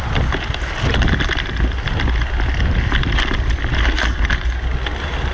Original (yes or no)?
yes